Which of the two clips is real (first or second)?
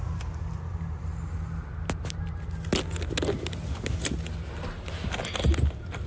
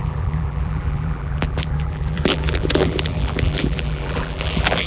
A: first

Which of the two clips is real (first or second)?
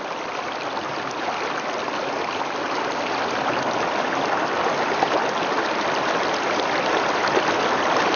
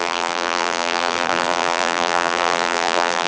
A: first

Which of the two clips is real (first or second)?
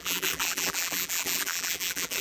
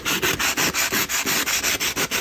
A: second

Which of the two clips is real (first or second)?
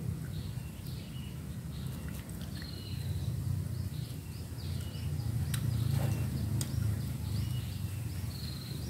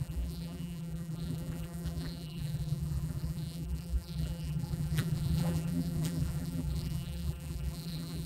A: first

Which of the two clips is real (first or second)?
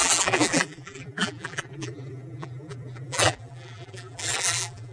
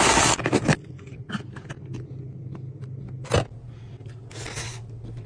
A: second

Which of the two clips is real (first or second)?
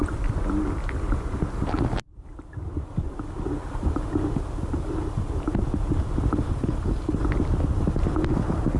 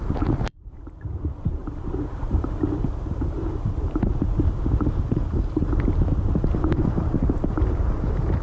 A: first